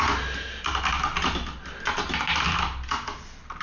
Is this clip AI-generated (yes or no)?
no